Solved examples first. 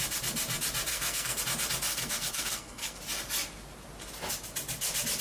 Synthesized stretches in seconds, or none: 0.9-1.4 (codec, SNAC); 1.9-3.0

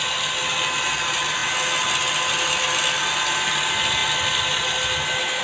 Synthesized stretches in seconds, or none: none

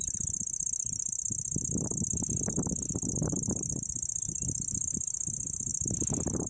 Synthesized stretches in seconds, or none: none